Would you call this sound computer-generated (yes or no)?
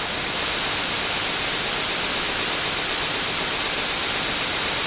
no